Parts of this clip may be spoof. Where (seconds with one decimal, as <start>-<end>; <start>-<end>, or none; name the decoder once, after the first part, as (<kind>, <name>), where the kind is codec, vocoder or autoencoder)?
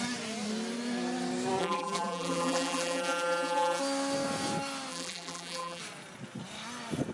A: 1.6-3.8 (vocoder, BigVGAN v2); 4.9-5.8